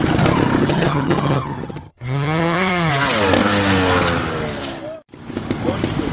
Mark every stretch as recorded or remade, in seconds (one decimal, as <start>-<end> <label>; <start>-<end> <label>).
0.0-0.6 recorded; 0.6-2.9 remade; 2.9-6.1 recorded